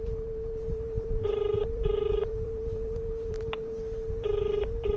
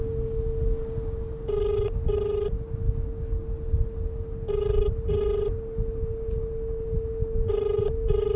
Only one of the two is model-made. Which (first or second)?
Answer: first